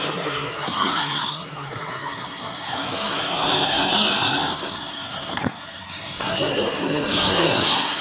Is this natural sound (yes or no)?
no